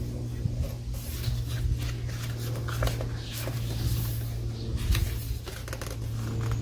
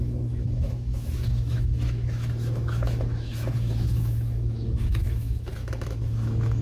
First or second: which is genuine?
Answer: first